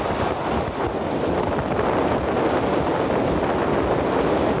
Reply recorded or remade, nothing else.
recorded